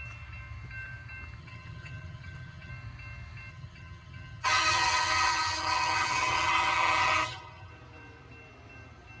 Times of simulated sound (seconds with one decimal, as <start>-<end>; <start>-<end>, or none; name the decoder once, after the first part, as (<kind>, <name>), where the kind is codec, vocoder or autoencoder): 1.4-2.7 (vocoder, HiFi-GAN); 3.5-7.7